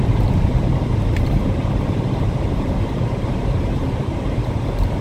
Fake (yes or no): yes